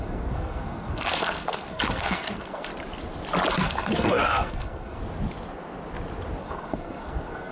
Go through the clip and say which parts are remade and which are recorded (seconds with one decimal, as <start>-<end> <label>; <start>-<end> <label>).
0.0-2.7 remade; 2.7-3.5 recorded; 3.5-5.0 remade; 5.0-6.4 recorded; 6.4-7.5 remade